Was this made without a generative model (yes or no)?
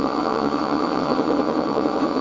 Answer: no